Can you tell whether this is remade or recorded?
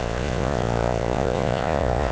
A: remade